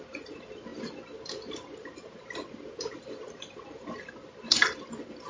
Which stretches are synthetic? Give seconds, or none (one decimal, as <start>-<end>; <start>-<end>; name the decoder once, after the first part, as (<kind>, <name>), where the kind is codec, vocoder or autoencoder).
none